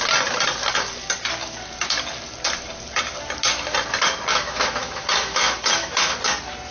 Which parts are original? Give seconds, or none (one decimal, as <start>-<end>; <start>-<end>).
0.0-4.3; 6.2-6.7